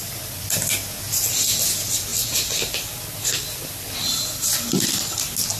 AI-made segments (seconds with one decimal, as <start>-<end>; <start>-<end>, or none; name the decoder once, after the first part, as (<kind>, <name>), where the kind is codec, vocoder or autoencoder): none

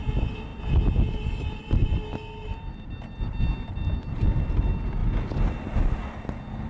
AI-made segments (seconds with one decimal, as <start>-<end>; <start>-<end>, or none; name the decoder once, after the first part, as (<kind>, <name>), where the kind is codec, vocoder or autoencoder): none

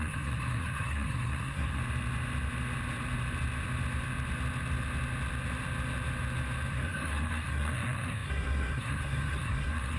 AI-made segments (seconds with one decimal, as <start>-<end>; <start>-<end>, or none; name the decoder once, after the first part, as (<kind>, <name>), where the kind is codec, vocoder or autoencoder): 0.0-1.8 (codec, SNAC); 6.7-10.0

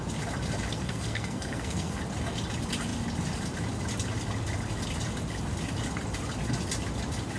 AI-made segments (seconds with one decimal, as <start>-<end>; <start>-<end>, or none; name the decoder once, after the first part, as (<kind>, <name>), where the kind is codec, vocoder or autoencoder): 0.7-2.0 (codec, SNAC)